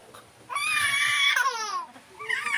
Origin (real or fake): real